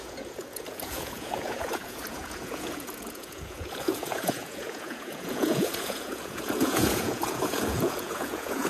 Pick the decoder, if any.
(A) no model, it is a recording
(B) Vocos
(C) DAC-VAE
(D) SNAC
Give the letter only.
B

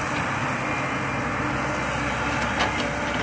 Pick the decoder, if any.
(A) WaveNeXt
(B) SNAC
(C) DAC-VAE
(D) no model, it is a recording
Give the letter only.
D